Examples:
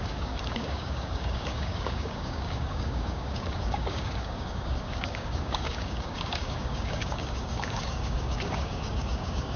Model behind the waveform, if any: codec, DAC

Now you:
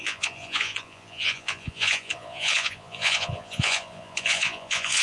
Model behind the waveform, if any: vocoder, Vocos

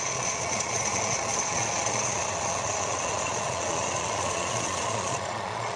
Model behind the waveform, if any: vocoder, Vocos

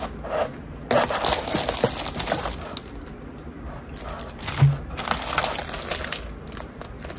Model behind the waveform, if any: none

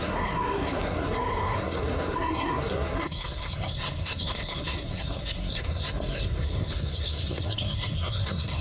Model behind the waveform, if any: codec, SNAC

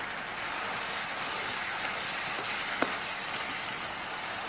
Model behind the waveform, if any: none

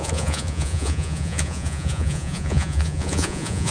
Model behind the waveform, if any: vocoder, Vocos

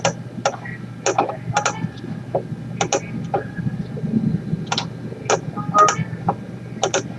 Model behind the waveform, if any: none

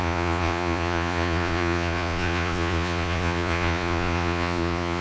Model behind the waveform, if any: vocoder, Vocos